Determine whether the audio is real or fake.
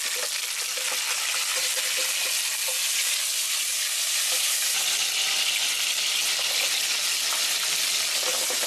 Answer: real